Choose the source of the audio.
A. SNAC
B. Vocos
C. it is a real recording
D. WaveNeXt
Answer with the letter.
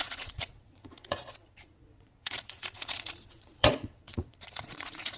B